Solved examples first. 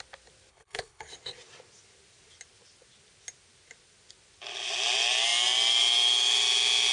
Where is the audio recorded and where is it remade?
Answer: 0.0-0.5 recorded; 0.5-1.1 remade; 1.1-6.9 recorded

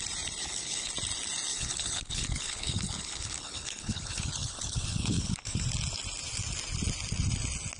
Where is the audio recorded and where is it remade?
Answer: 0.0-0.4 recorded; 0.4-0.9 remade; 0.9-1.5 recorded; 1.5-5.6 remade; 5.6-7.8 recorded

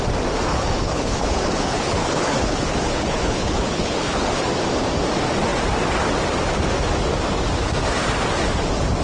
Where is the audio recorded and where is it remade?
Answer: 0.0-0.5 recorded; 0.5-4.4 remade; 4.4-9.0 recorded

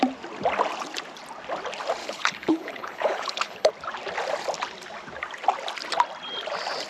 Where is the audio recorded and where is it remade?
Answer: 0.0-2.0 recorded; 2.0-3.7 remade; 3.7-6.9 recorded

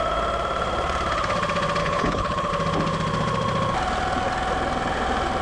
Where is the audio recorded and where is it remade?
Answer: 0.0-1.8 recorded; 1.8-2.5 remade; 2.5-5.4 recorded

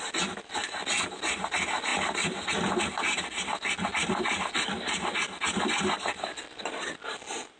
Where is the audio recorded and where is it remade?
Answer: 0.0-7.6 recorded

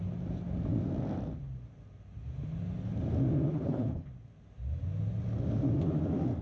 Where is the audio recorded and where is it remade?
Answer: 0.0-3.5 recorded; 3.5-4.1 remade; 4.1-6.4 recorded